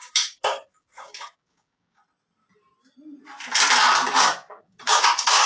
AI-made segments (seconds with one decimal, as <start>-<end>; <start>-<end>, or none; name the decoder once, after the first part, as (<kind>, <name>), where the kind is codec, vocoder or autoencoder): 0.0-2.0 (codec, DAC); 4.2-5.5